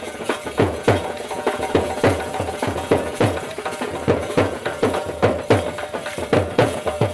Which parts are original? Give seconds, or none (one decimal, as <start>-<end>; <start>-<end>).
5.2-6.5